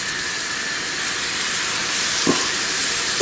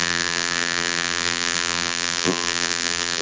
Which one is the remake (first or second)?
second